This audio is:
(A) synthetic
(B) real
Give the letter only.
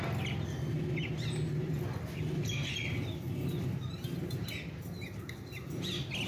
B